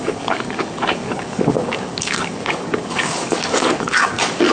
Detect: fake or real fake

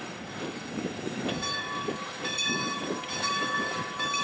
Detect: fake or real fake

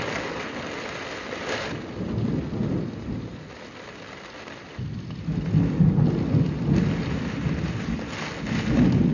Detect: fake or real real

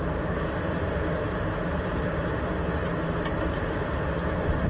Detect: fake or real real